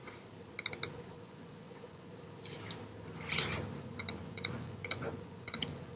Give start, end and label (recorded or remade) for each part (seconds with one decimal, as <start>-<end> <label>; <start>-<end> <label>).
0.0-1.0 recorded; 1.0-2.1 remade; 2.1-3.8 recorded; 3.8-6.0 remade